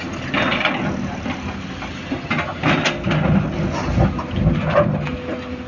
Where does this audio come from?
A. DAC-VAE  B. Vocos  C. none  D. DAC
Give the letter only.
C